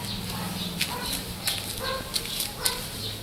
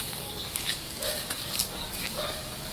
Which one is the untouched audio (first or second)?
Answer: first